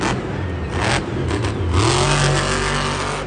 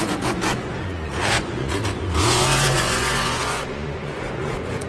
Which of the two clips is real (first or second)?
first